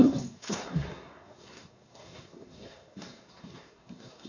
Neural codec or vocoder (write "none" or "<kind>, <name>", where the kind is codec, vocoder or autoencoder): codec, SNAC